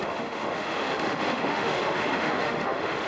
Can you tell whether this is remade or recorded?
remade